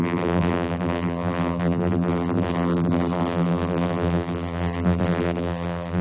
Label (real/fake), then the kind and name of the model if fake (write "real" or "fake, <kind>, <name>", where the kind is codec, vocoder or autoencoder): fake, vocoder, BigVGAN v2